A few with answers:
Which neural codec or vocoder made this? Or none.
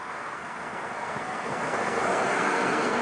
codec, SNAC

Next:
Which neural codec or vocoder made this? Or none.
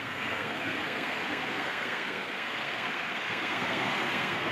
codec, SNAC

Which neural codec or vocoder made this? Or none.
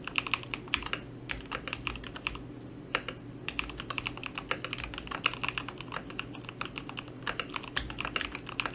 none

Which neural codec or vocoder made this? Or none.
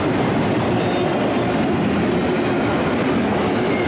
none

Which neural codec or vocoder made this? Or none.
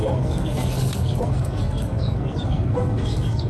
codec, SNAC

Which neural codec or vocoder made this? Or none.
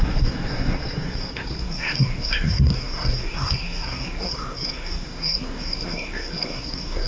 codec, SNAC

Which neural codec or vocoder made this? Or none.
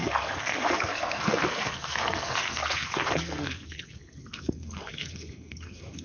codec, SNAC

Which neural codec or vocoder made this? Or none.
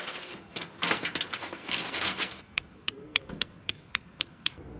codec, SNAC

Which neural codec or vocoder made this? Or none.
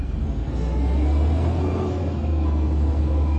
codec, SNAC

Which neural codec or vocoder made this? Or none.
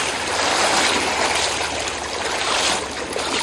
none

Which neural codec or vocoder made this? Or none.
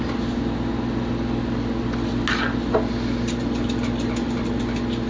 none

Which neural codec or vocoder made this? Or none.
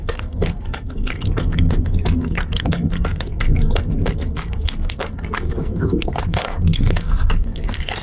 codec, SNAC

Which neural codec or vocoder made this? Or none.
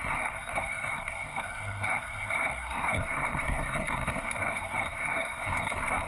codec, SNAC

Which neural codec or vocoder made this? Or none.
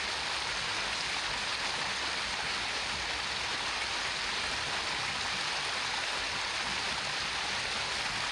none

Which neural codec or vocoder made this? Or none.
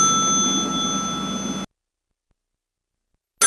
none